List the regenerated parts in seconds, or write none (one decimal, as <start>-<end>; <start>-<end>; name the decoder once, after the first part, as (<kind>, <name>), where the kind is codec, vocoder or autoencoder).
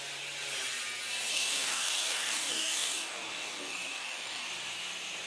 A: 1.3-4.5 (codec, DAC)